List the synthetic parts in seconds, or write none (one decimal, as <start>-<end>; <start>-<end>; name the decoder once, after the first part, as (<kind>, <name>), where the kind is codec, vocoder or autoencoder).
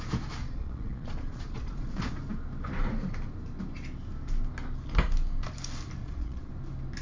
0.4-2.1 (vocoder, Vocos); 6.0-6.5